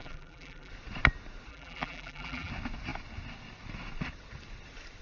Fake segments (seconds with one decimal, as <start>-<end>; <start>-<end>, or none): 0.0-0.7; 1.5-2.5